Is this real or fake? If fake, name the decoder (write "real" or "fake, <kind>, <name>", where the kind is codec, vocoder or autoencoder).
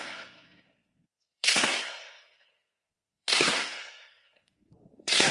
fake, codec, SNAC